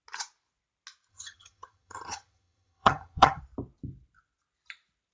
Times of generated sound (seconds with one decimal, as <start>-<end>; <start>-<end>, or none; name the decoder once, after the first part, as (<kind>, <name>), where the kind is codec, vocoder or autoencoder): 1.1-3.4 (vocoder, HiFi-GAN)